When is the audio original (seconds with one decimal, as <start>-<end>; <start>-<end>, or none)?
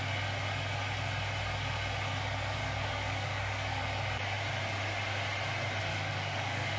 0.0-2.6; 3.8-5.9